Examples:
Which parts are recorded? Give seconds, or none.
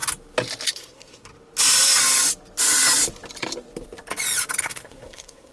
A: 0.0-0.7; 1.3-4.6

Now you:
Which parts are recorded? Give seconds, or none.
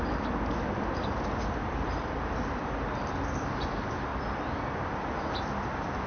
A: 4.1-5.0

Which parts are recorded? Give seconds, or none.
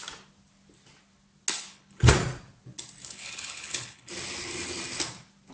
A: 0.0-1.5; 2.1-3.0; 4.1-5.5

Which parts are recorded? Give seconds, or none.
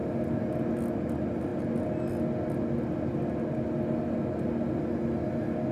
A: 0.0-5.7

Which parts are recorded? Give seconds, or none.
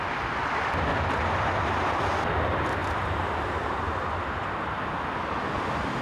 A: 0.0-0.9; 2.0-2.8; 4.1-6.0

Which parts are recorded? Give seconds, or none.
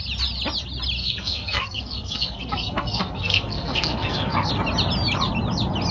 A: 0.0-1.0; 4.5-5.9